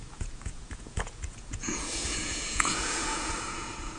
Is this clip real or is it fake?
fake